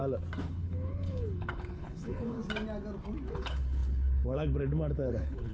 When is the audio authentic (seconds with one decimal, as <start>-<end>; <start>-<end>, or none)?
0.0-0.5; 2.4-3.3